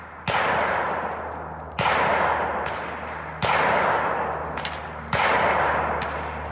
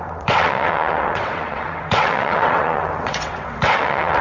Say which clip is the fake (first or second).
second